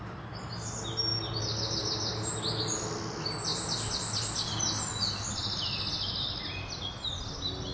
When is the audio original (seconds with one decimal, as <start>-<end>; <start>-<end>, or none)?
0.0-7.7